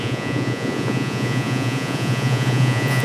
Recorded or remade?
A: remade